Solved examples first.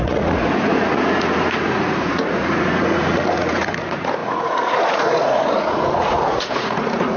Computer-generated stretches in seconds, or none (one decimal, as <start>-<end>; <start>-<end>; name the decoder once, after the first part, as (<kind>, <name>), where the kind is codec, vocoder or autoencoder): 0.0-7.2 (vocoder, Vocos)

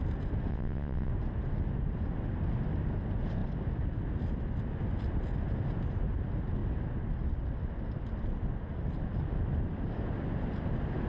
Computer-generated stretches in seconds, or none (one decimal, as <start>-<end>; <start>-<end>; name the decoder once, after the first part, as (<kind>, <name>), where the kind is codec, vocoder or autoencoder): 0.5-1.1 (vocoder, WaveNeXt)

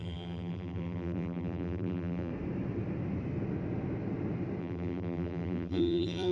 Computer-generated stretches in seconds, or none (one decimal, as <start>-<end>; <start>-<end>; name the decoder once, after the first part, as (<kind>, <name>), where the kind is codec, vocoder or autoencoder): 0.0-2.3 (vocoder, BigVGAN v2); 4.6-6.3